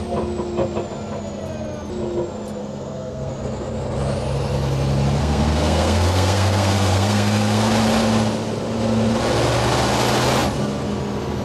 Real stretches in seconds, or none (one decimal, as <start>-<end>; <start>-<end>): 0.0-2.6; 3.3-5.2; 7.7-11.4